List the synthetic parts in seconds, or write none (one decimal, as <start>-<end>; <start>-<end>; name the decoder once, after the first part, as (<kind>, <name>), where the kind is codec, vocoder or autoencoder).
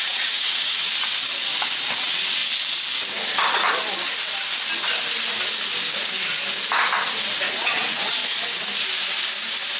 0.0-0.9 (vocoder, WaveNeXt); 2.0-2.4; 7.5-8.2